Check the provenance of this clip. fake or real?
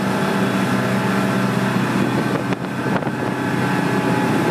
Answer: real